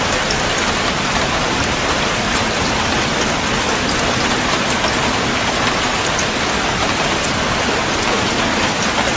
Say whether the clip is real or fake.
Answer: real